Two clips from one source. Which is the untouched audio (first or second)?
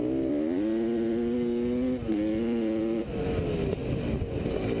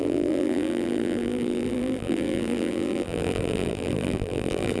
first